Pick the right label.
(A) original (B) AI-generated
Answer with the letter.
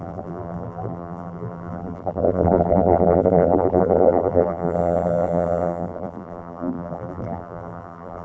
B